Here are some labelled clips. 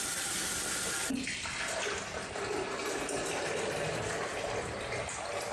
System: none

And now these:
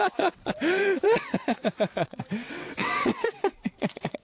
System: vocoder, WaveNeXt